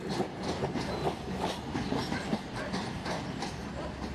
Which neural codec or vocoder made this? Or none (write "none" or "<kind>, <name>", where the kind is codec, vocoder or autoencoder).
none